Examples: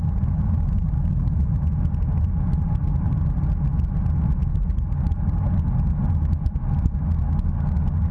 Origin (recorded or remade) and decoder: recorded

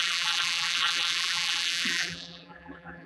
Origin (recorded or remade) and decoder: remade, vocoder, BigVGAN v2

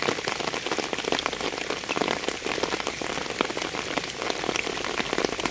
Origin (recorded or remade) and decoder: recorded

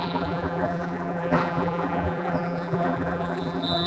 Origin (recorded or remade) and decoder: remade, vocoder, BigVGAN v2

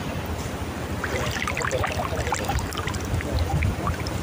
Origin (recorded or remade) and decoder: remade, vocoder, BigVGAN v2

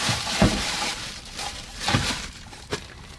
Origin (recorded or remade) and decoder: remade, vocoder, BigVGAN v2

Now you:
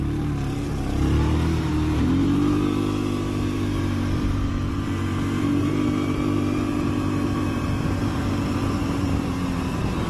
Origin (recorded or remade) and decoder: remade, vocoder, BigVGAN v2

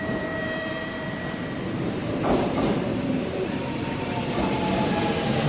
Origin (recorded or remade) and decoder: remade, vocoder, BigVGAN v2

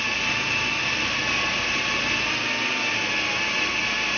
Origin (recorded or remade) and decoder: recorded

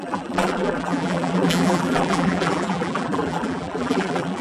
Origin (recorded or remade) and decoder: remade, vocoder, BigVGAN v2